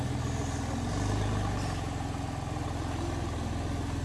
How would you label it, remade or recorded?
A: recorded